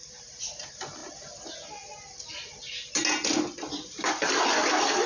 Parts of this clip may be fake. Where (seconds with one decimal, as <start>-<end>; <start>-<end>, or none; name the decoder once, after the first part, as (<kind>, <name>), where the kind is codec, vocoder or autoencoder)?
0.0-0.5 (vocoder, BigVGAN v2)